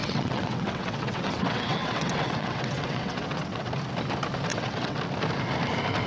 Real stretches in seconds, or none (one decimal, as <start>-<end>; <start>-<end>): 3.7-4.5; 5.0-6.1